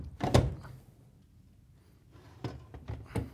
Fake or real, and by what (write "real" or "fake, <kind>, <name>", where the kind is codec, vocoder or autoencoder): real